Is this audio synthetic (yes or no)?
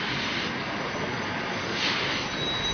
no